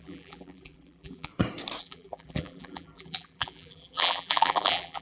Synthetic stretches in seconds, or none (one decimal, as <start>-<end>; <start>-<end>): 0.0-1.3; 1.8-5.0